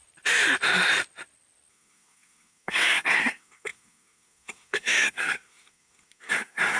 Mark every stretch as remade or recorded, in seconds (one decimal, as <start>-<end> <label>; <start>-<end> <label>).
0.0-1.7 recorded; 1.7-6.8 remade

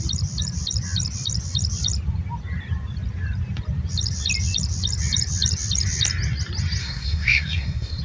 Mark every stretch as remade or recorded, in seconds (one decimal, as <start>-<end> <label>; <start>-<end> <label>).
0.0-6.8 recorded; 6.8-8.0 remade

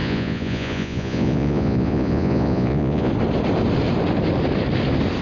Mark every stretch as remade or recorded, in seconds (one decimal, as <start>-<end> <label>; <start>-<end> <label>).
0.0-3.1 remade; 3.1-5.2 recorded

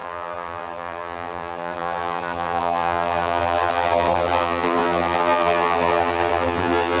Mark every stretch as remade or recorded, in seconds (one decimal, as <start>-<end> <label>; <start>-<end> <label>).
0.0-7.0 remade

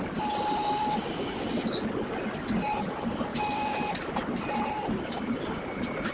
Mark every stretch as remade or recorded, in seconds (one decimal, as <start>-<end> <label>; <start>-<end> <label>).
0.0-0.6 recorded; 0.6-1.5 remade; 1.5-3.3 recorded; 3.3-3.9 remade; 3.9-6.1 recorded